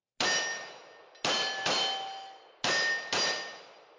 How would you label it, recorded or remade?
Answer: recorded